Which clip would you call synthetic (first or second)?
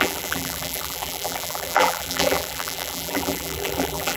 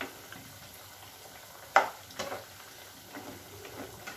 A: first